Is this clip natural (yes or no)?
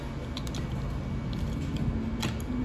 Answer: yes